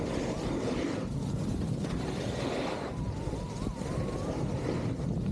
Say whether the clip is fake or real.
real